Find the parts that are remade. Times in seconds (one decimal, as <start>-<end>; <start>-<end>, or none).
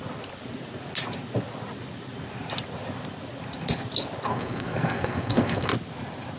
4.3-5.7